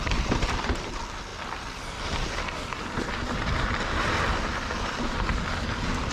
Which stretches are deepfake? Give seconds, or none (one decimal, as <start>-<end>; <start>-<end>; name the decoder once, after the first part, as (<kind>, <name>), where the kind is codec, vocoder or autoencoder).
none